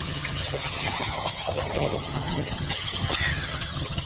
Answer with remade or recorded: remade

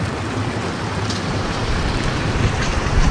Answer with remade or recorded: remade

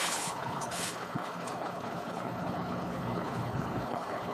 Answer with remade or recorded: remade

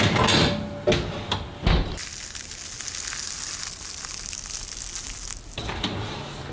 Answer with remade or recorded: recorded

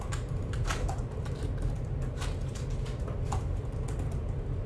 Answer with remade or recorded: recorded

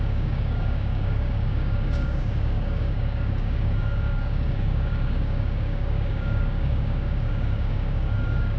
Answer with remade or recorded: remade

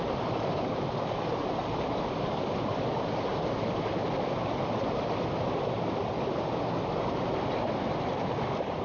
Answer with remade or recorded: recorded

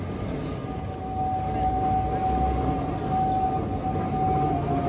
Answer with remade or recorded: recorded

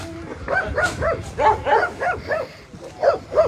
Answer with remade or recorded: recorded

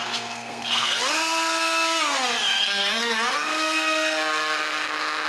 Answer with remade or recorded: remade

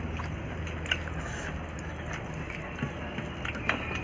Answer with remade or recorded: recorded